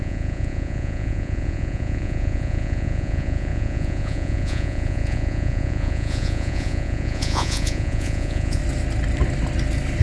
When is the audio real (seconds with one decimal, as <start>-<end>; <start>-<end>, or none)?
8.6-10.0